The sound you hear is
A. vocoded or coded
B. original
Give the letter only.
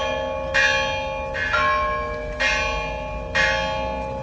B